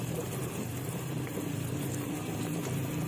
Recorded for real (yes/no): no